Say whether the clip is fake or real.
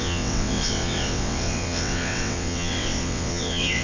fake